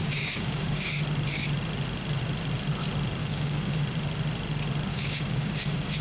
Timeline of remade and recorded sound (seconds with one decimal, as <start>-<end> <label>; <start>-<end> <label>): 0.0-0.9 remade; 0.9-3.2 recorded; 3.2-3.8 remade; 3.8-4.9 recorded; 4.9-6.0 remade